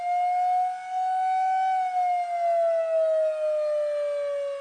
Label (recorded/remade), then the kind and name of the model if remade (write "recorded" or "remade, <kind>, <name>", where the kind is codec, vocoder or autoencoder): recorded